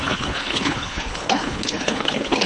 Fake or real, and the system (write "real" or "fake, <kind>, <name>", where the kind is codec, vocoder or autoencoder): fake, codec, HILCodec